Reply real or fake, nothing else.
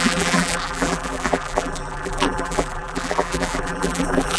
fake